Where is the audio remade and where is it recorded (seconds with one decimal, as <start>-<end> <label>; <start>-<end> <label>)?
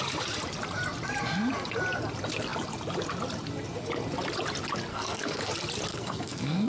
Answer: 0.0-4.9 recorded; 4.9-5.5 remade; 5.5-5.9 recorded; 5.9-6.7 remade